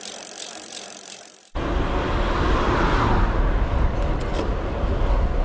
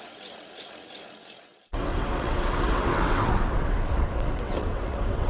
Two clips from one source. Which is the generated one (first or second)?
second